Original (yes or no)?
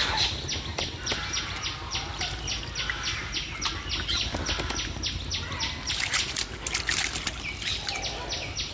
yes